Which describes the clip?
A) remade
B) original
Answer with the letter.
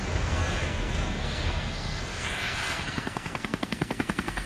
A